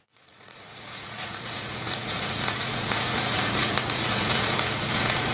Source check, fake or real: fake